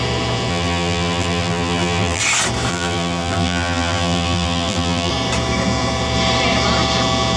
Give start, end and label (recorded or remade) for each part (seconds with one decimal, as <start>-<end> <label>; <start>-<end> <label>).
0.0-0.5 recorded; 0.5-2.2 remade; 2.2-2.7 recorded; 2.7-5.1 remade; 5.1-7.4 recorded